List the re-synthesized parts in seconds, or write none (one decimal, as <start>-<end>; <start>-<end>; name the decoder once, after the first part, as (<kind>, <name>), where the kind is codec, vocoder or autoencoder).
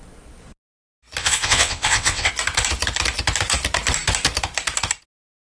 1.2-2.3 (vocoder, WaveNeXt)